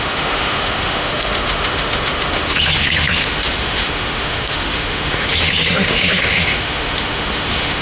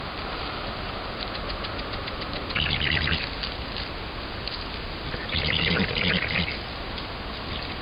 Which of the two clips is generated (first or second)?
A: first